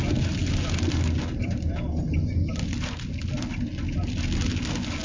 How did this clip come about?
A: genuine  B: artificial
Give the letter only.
A